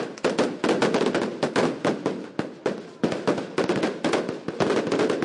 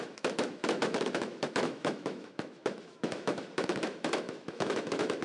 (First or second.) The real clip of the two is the first